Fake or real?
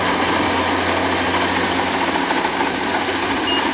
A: real